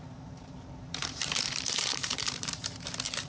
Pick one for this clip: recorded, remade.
remade